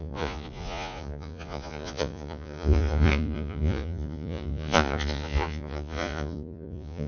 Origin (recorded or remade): remade